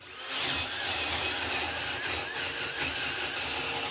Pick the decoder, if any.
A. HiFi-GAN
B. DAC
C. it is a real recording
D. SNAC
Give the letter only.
C